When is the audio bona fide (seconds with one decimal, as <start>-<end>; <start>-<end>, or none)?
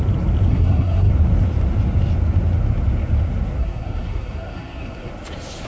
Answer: 0.0-0.5; 1.1-3.6; 5.1-5.7